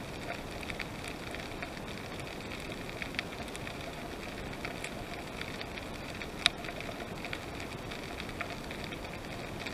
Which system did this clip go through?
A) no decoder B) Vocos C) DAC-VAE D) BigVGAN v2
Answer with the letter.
A